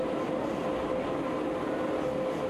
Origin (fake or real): real